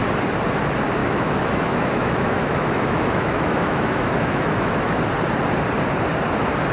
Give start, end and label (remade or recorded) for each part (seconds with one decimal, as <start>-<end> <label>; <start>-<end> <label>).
0.0-1.0 recorded; 1.0-5.0 remade; 5.0-6.7 recorded